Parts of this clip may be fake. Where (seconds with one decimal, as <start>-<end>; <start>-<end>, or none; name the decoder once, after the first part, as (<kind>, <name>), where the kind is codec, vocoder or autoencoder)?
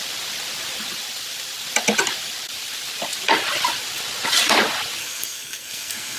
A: 5.0-6.2 (codec, SNAC)